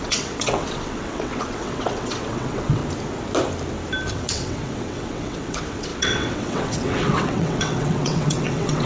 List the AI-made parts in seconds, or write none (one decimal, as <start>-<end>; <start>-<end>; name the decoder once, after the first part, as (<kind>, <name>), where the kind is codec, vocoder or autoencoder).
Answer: 0.0-2.8 (vocoder, WaveNeXt); 4.1-8.9